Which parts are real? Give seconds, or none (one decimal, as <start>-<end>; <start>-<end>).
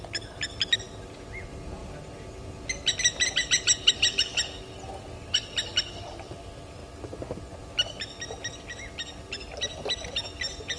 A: 0.0-10.8